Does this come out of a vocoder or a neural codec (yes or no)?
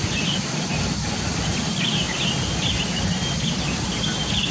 no